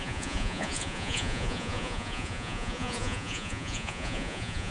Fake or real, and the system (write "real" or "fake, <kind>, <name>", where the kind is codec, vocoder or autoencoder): fake, vocoder, Vocos